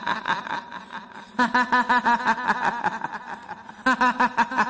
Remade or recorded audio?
recorded